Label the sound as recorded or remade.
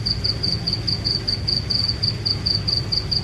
recorded